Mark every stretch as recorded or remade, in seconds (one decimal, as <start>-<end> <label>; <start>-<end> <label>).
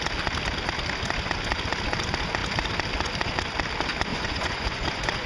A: 0.0-4.1 recorded; 4.1-5.3 remade